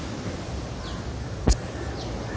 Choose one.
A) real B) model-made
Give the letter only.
A